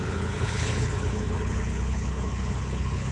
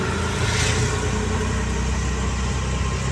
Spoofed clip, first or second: first